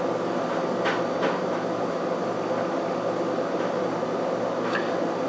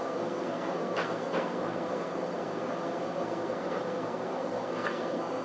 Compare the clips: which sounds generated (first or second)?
second